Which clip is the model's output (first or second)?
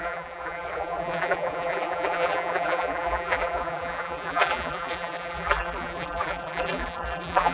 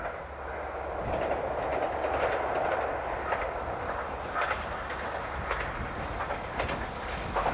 first